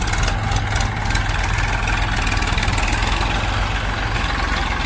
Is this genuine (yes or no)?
yes